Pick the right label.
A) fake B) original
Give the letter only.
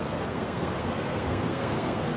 A